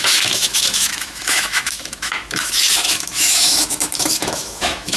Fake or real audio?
fake